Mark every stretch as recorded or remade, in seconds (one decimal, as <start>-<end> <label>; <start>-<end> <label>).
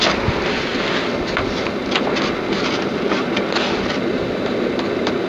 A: 0.0-5.3 recorded